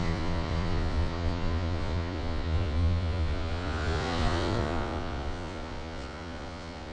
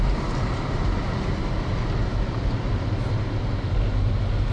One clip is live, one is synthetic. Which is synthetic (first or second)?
first